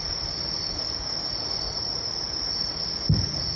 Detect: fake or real real